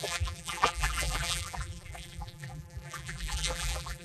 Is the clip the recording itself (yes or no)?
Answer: no